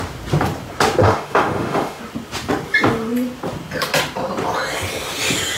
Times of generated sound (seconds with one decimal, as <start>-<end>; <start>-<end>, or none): 1.0-2.0